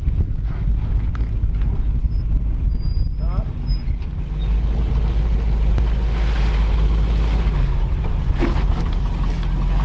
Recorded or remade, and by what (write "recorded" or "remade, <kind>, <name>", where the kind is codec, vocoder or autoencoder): recorded